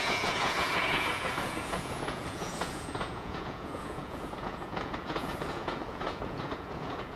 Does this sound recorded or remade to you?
remade